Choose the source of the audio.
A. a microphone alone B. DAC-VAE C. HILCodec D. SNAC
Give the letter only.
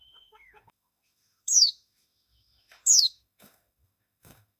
B